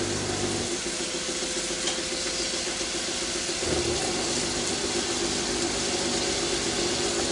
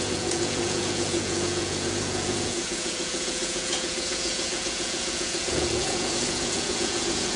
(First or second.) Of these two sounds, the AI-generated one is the second